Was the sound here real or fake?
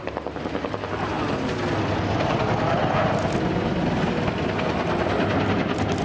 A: real